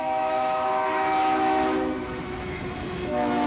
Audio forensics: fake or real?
fake